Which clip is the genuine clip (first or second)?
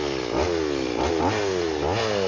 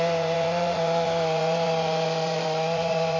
first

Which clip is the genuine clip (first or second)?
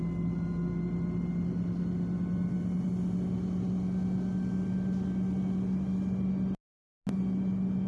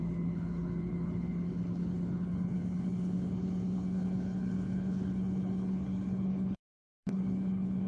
first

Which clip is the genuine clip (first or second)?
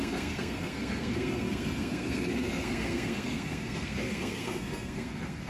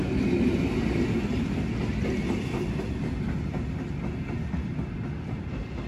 second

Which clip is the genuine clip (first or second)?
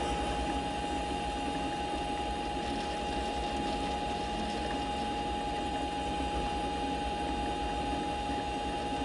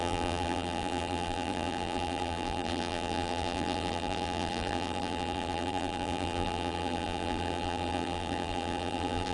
first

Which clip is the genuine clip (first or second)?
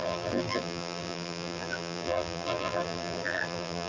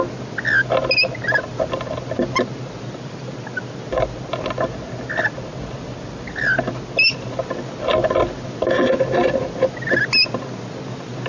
second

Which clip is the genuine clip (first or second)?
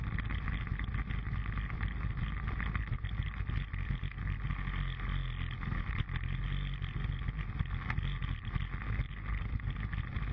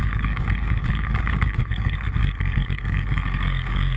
first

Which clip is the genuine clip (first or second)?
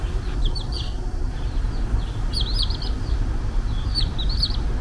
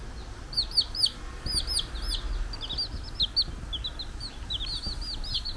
second